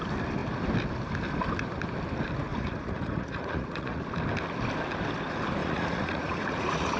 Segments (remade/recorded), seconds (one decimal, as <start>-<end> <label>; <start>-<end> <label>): 0.0-2.5 recorded; 2.5-4.0 remade; 4.0-5.6 recorded; 5.6-7.0 remade